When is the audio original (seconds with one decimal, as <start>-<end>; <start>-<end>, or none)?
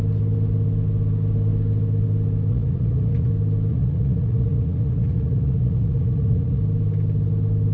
0.0-2.5; 3.3-3.7; 6.6-7.7